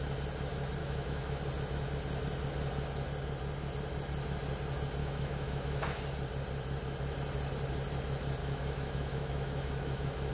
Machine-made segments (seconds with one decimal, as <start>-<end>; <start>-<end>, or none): 0.8-1.4; 5.0-6.0; 8.4-10.3